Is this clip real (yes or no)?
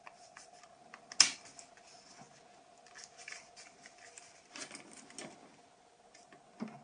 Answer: yes